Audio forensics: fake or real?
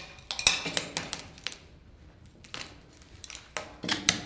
real